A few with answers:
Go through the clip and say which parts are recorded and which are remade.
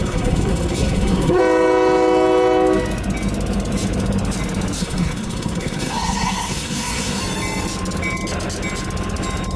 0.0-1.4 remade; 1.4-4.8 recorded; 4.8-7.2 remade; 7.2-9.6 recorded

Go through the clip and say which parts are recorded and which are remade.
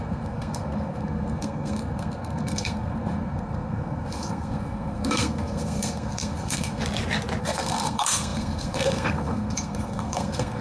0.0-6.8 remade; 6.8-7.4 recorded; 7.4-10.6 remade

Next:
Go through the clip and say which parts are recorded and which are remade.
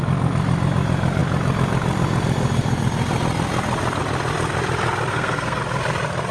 0.0-5.1 recorded; 5.1-5.6 remade; 5.6-6.3 recorded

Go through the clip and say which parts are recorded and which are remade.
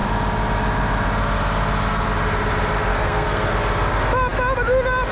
0.0-2.9 recorded; 2.9-3.5 remade; 3.5-5.1 recorded